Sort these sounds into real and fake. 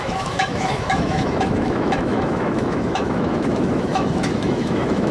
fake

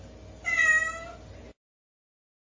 real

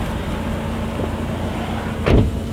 real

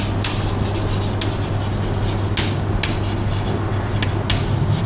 real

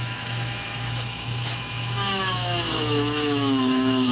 fake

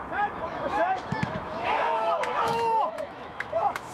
fake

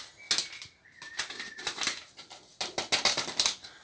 real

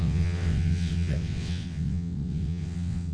fake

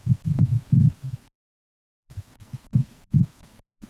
fake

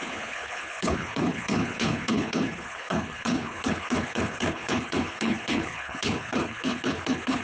fake